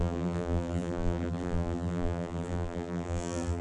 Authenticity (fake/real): fake